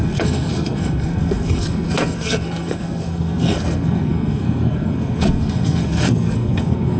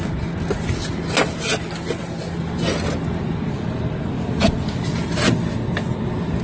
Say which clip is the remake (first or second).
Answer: first